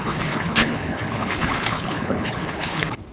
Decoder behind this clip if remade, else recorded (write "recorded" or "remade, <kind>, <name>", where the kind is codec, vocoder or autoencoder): remade, codec, HILCodec